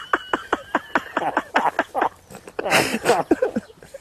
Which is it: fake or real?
real